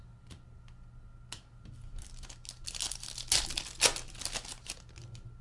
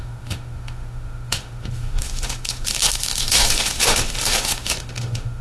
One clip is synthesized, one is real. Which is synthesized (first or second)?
second